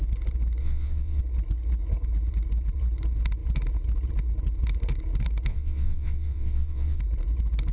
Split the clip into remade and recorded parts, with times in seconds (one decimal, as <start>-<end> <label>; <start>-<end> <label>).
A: 0.0-0.6 recorded; 0.6-1.2 remade; 1.2-5.5 recorded; 5.5-7.0 remade; 7.0-7.7 recorded